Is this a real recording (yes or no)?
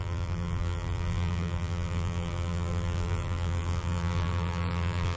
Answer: no